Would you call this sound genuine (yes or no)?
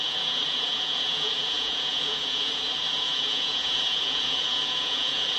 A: no